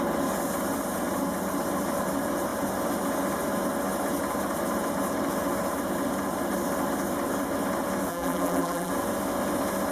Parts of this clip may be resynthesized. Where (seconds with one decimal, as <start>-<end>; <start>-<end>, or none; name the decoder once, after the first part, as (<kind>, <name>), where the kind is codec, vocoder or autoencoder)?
8.1-8.9 (vocoder, BigVGAN v2)